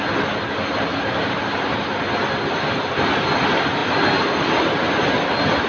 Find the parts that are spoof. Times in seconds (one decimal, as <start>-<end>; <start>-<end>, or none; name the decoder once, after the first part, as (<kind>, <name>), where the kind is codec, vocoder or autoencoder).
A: 1.1-2.0 (vocoder, BigVGAN v2)